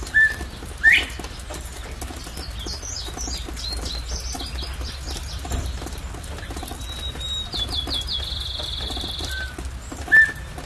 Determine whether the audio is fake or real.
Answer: real